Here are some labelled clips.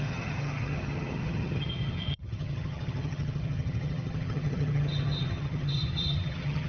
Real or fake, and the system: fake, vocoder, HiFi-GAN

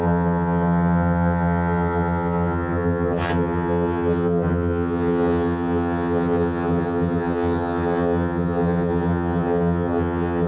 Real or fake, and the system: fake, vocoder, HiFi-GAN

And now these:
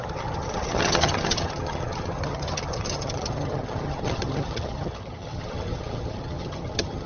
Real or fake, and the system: fake, vocoder, HiFi-GAN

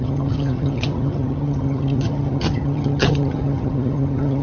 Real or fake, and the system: fake, vocoder, HiFi-GAN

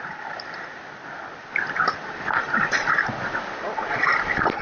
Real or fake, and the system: real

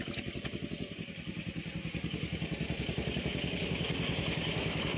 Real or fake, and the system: real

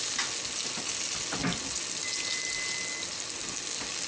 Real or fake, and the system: real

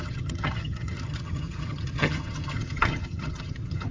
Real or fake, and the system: fake, vocoder, HiFi-GAN